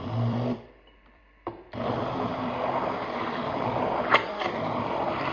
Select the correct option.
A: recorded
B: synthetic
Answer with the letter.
B